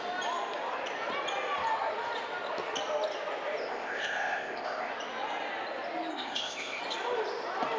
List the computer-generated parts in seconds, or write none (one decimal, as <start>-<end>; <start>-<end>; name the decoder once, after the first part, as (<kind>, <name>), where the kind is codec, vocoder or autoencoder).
3.6-4.9 (codec, ZipCodec); 6.1-6.8